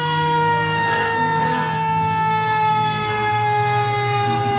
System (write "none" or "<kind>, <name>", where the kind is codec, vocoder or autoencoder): codec, SNAC